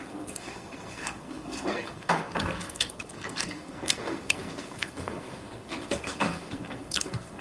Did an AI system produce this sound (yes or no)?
yes